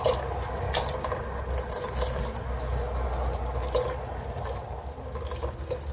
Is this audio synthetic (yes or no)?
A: no